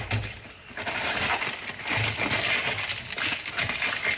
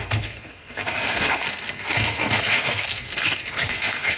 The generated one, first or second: second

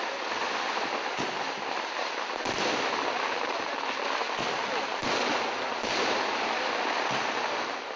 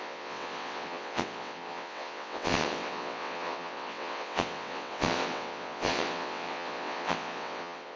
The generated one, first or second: second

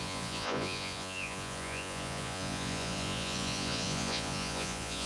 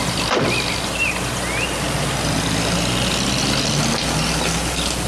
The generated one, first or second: first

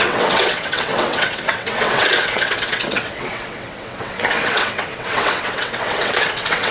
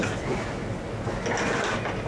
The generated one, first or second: first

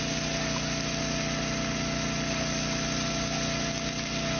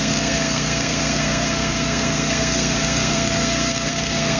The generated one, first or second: second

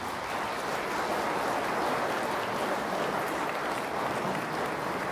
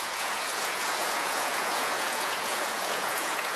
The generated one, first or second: second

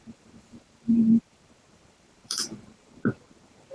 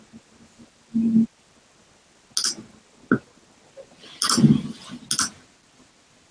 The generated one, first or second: first